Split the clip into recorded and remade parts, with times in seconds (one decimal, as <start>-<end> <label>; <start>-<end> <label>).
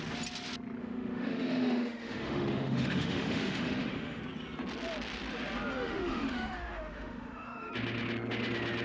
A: 0.0-0.8 recorded; 0.8-4.2 remade; 4.2-5.7 recorded; 5.7-7.7 remade; 7.7-8.8 recorded